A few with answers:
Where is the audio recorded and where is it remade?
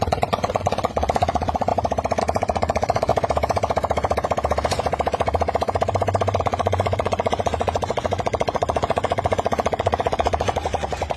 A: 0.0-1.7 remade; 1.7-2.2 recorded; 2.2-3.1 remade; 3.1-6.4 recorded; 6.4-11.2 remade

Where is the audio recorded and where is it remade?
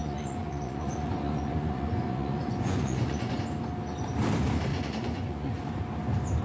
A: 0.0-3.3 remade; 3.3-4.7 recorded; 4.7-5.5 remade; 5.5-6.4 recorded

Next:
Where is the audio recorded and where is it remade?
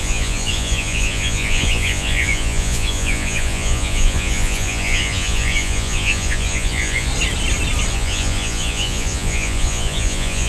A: 0.0-7.1 remade; 7.1-7.9 recorded; 7.9-10.5 remade